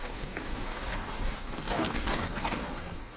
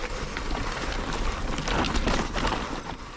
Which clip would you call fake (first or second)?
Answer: first